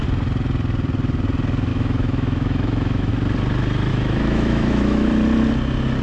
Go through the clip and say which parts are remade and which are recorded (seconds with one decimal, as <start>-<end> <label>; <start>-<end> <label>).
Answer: 0.0-1.7 recorded; 1.7-3.1 remade; 3.1-3.9 recorded; 3.9-5.1 remade; 5.1-6.0 recorded